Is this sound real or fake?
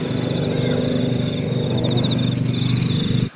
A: real